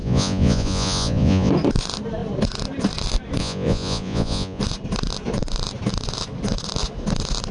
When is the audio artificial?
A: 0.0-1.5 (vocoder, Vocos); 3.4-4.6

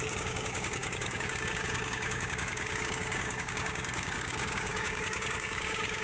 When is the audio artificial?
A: 0.0-6.0 (codec, DAC)

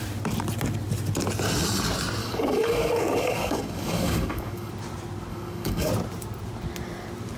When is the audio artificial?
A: 2.2-4.7 (codec, DAC); 5.3-5.9

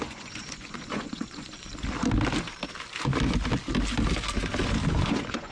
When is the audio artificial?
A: 0.0-1.7 (vocoder, Vocos); 4.9-5.5